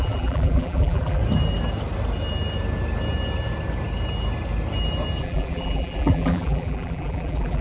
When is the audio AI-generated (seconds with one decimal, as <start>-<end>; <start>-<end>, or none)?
0.0-1.2; 5.2-7.6